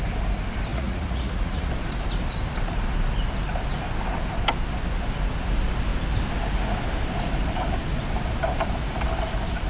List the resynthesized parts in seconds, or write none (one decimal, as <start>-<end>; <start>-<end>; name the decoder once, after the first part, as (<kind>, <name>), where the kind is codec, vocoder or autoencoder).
0.7-1.7 (vocoder, Vocos)